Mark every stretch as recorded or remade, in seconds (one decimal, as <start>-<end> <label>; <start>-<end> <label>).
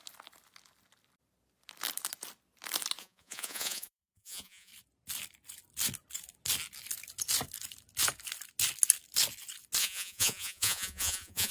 0.0-3.0 recorded; 3.0-4.7 remade; 4.7-9.8 recorded; 9.8-11.5 remade